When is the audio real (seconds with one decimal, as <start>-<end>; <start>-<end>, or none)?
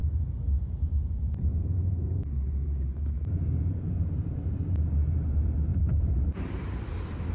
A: 0.0-0.8